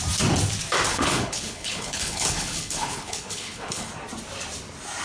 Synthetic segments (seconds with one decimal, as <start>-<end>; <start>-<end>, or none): 0.9-3.9